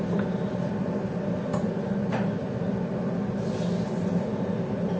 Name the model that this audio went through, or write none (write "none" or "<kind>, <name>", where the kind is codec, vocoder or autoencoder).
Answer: none